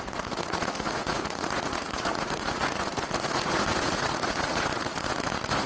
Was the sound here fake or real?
fake